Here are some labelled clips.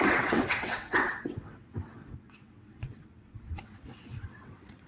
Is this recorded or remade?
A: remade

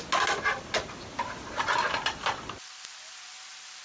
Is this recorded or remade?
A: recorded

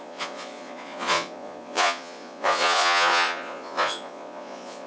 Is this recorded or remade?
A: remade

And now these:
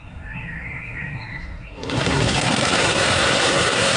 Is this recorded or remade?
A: remade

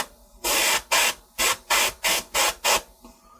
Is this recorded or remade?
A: recorded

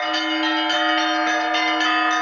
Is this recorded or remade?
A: recorded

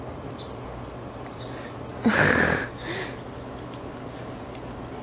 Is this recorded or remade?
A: recorded